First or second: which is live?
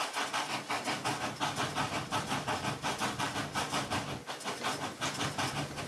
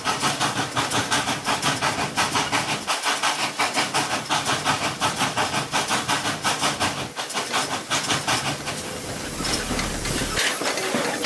first